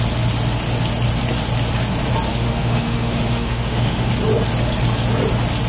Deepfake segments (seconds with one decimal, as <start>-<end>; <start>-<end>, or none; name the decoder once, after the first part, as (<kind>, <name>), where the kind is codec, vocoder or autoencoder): 2.3-4.1 (autoencoder, DAC-VAE)